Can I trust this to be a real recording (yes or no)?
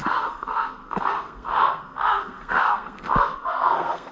no